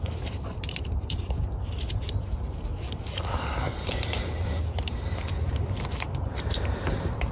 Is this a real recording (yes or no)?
no